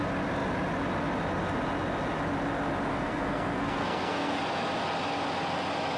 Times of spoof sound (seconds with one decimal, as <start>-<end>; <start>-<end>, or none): 2.9-4.4